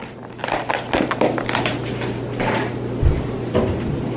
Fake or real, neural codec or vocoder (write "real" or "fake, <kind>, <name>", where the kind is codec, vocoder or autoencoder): real